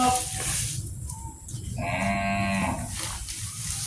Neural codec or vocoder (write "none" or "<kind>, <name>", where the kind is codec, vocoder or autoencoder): none